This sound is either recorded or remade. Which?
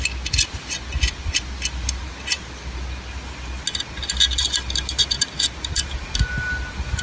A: recorded